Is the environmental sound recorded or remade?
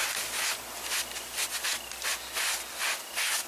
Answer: recorded